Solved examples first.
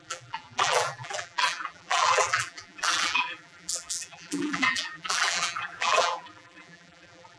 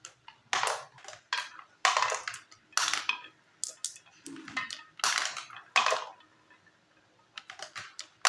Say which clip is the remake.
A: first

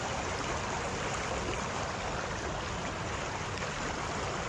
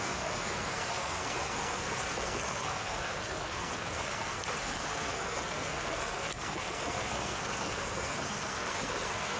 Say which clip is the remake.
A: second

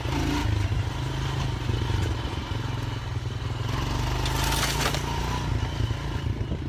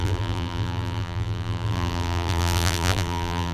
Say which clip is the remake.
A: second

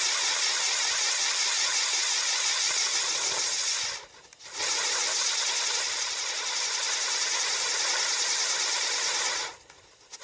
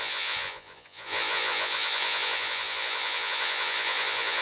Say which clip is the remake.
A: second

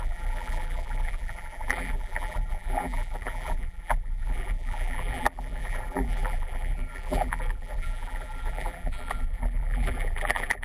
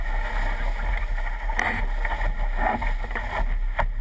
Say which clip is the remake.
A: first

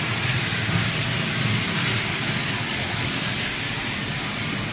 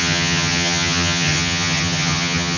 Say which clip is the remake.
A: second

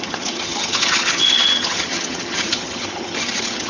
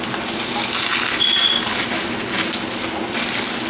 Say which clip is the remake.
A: first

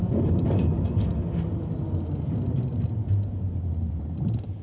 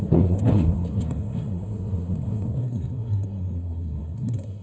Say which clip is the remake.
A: second